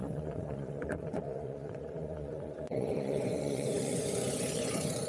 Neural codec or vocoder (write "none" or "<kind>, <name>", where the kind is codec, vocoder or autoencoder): vocoder, Vocos